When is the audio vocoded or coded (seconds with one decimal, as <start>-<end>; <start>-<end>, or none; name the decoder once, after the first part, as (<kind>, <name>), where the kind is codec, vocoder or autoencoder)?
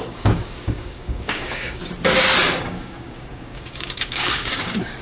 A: 0.0-1.8 (codec, DAC); 2.6-5.0